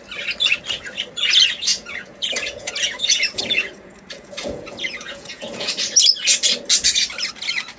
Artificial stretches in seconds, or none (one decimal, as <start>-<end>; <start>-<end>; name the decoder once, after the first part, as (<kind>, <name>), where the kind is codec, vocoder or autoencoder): 1.7-5.7 (vocoder, Vocos)